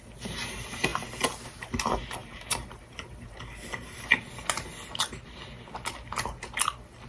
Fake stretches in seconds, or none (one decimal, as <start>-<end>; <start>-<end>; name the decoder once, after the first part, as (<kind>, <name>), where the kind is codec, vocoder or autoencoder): 2.2-3.4 (vocoder, BigVGAN v2)